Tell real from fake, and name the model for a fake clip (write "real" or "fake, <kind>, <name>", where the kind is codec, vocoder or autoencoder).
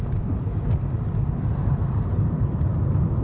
fake, vocoder, BigVGAN v2